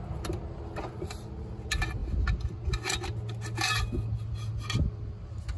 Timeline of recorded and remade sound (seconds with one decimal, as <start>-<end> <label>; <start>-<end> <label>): 0.0-5.6 recorded